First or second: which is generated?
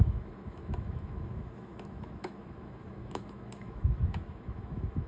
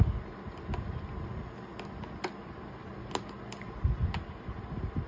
first